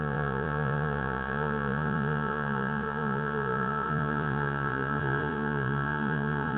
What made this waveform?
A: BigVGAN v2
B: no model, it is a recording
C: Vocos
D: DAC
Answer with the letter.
C